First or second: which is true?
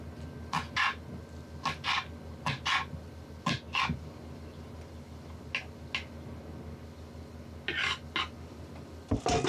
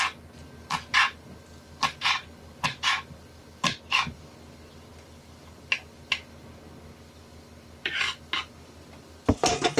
first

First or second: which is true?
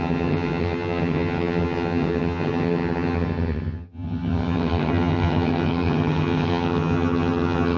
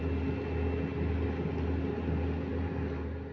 second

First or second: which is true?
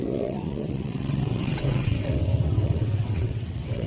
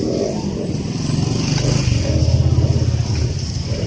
second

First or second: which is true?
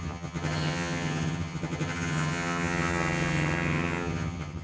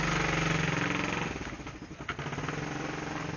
second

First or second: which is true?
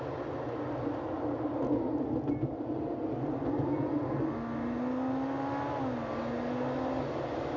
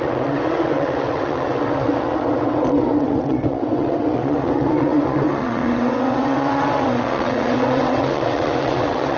first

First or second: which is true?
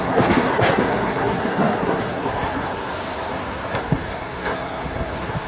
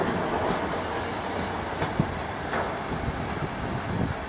second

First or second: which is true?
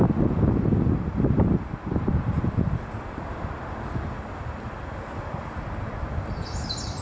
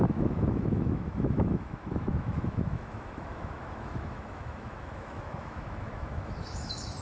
first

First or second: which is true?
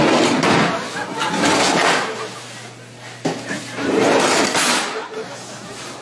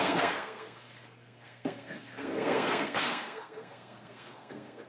first